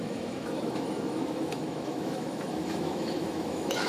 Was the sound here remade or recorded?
remade